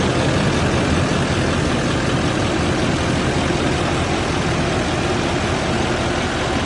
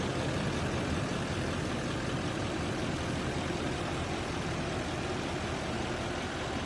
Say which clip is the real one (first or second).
first